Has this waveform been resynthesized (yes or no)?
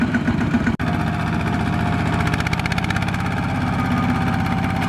no